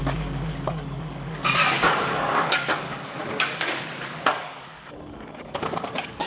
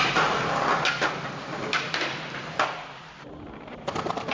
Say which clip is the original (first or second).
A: second